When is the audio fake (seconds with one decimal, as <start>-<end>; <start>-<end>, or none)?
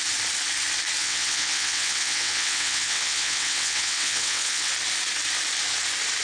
1.0-4.7